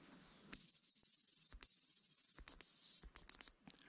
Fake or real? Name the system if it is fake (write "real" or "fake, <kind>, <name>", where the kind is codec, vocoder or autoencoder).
real